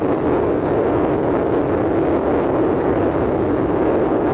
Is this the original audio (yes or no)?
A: yes